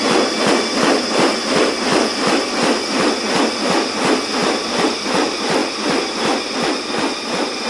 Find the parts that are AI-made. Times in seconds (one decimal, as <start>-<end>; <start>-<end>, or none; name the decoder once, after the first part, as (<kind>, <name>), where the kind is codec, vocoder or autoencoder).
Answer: none